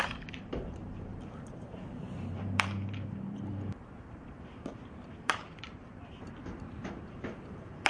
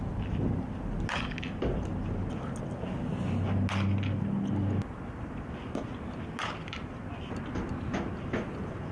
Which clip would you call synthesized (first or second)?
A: first